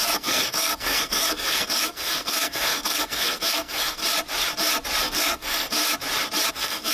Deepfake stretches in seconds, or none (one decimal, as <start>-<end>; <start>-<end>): 0.0-4.0; 5.0-5.8; 6.5-6.9